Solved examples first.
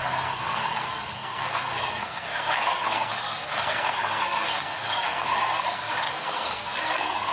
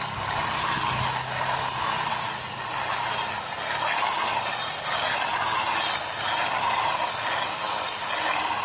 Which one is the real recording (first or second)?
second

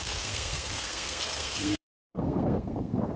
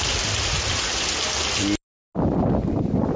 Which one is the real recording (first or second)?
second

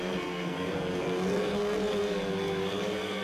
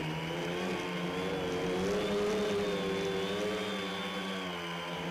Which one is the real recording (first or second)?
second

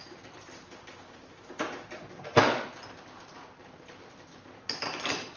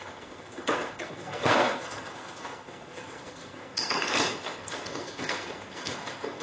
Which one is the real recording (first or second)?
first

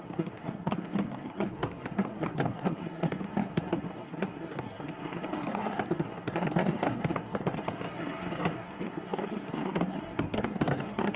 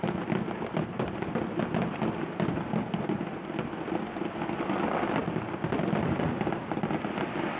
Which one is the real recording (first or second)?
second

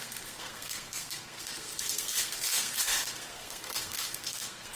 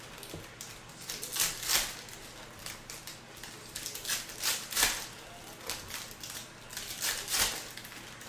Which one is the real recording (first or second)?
second